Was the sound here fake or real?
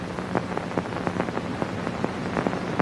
fake